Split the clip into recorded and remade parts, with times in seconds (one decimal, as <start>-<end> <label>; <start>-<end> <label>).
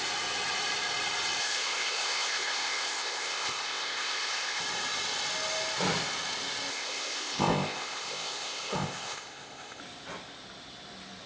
0.0-1.4 recorded; 1.4-4.6 remade; 4.6-6.7 recorded; 6.7-9.8 remade; 9.8-11.3 recorded